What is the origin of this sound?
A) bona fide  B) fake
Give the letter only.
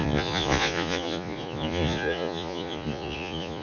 B